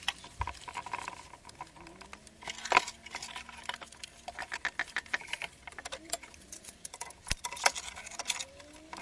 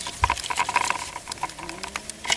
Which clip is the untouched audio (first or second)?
first